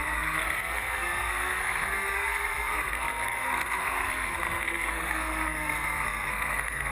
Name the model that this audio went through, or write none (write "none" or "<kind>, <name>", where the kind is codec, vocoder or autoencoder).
codec, SNAC